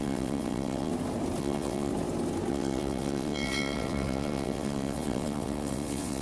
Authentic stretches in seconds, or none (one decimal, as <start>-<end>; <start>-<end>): 0.9-1.4; 1.9-2.5